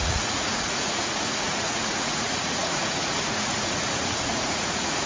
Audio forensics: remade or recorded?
remade